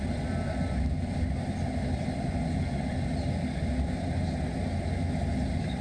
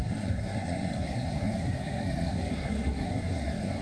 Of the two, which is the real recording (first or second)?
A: first